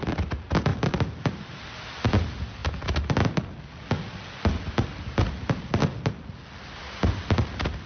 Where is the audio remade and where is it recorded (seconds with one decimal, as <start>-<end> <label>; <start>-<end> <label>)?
0.0-7.9 recorded